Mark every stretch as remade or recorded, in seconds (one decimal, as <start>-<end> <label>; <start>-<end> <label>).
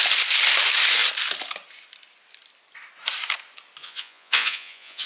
0.0-3.8 recorded; 3.8-5.1 remade